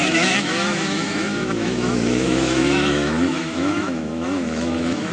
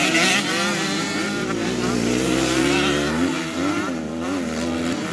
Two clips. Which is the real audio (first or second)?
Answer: second